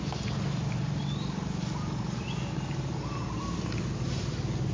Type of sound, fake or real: real